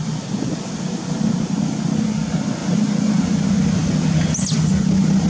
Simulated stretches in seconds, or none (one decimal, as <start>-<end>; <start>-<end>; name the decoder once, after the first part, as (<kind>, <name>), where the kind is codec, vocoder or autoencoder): none